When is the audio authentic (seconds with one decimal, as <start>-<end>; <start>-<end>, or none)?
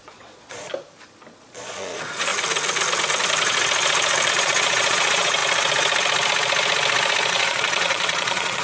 0.7-1.4; 2.3-4.3; 5.4-7.3